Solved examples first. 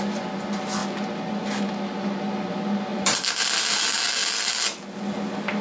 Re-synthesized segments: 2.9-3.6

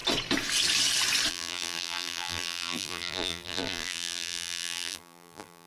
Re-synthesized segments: 1.3-5.7

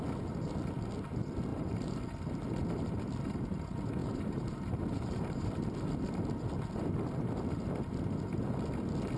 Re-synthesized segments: 1.5-2.0; 4.0-5.5